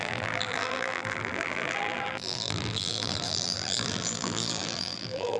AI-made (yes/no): yes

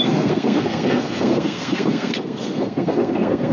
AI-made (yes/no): yes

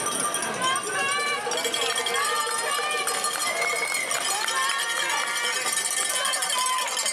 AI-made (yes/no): no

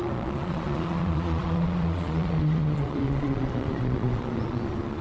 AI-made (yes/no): yes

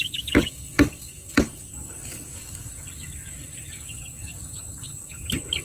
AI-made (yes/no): yes